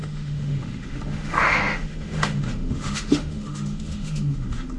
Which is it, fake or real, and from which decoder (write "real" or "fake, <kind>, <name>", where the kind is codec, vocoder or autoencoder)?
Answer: fake, autoencoder, DAC-VAE